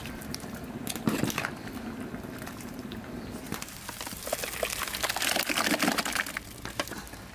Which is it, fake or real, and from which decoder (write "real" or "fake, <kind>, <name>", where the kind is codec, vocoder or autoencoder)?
real